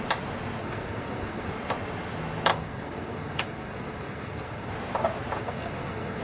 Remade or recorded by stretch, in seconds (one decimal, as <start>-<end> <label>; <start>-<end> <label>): 0.0-0.6 recorded; 0.6-1.5 remade; 1.5-2.5 recorded; 2.5-4.7 remade; 4.7-5.4 recorded; 5.4-6.2 remade